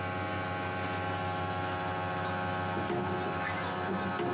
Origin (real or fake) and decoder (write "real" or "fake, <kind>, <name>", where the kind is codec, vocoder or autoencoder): real